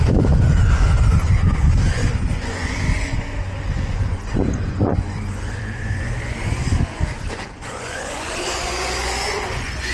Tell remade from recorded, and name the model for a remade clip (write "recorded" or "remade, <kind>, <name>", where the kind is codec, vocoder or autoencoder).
remade, vocoder, Vocos